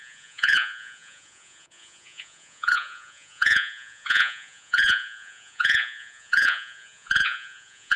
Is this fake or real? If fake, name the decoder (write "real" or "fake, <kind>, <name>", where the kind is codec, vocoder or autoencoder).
fake, vocoder, Vocos